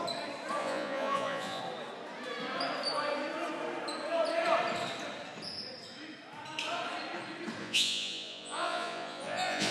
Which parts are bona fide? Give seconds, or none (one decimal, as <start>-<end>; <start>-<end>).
0.0-0.6; 1.6-7.6